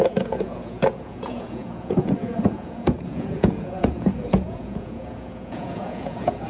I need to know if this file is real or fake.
fake